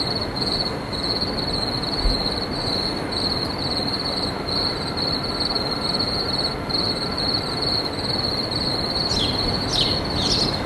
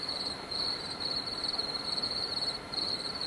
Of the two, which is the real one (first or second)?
first